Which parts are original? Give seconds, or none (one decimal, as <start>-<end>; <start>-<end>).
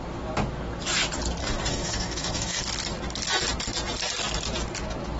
0.0-1.4; 2.6-5.2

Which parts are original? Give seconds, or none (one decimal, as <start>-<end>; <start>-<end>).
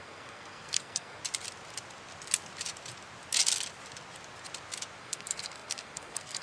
1.2-5.0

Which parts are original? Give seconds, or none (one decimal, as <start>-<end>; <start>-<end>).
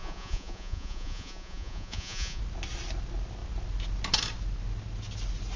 2.4-5.6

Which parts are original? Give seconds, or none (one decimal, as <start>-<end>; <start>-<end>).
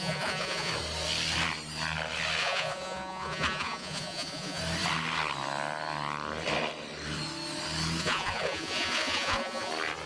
0.7-2.4; 4.6-8.0; 9.7-10.1